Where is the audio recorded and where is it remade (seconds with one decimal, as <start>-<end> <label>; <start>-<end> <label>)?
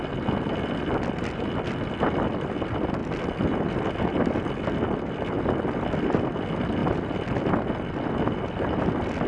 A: 0.0-9.3 recorded